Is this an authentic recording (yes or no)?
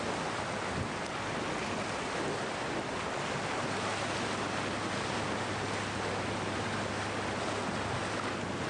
yes